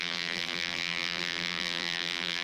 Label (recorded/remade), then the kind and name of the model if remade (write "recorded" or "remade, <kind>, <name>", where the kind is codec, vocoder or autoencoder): remade, vocoder, BigVGAN v2